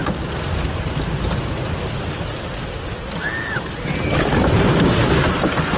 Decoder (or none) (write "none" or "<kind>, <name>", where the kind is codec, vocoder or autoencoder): none